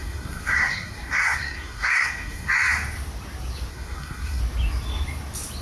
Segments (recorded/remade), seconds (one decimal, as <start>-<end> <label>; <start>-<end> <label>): 0.0-2.5 remade; 2.5-3.7 recorded; 3.7-4.4 remade; 4.4-5.6 recorded